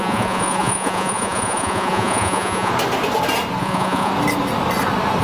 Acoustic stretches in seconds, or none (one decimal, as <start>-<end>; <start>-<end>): 2.7-3.6; 4.1-5.2